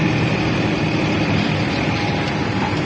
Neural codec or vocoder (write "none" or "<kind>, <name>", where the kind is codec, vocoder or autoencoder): none